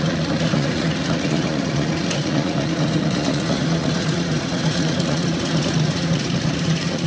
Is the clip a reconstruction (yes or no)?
yes